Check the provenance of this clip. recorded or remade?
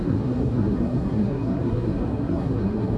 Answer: remade